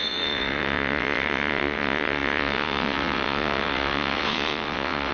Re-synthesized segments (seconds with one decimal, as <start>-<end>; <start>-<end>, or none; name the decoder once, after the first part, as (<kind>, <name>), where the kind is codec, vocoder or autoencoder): 0.0-5.1 (vocoder, WaveNeXt)